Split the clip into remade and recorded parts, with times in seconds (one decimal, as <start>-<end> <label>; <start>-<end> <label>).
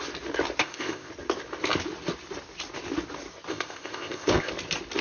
0.0-0.6 recorded; 0.6-1.1 remade; 1.1-3.5 recorded; 3.5-4.5 remade; 4.5-5.0 recorded